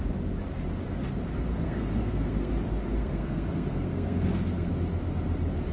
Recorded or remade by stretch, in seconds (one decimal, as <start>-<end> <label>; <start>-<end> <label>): 0.0-1.5 recorded; 1.5-2.5 remade; 2.5-3.0 recorded; 3.0-4.7 remade; 4.7-5.7 recorded